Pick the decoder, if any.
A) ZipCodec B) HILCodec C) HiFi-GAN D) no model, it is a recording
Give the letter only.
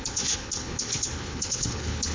B